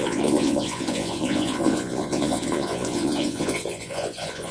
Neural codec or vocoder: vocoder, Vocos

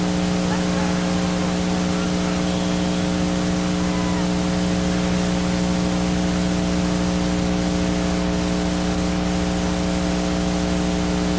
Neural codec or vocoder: none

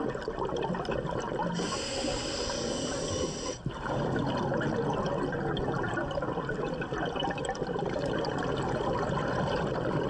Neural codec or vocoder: none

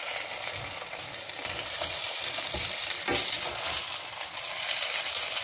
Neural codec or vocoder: vocoder, BigVGAN v2